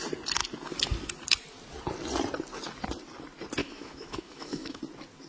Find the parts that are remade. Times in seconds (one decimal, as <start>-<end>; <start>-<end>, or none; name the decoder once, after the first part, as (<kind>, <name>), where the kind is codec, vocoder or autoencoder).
3.6-4.8 (autoencoder, DAC-VAE)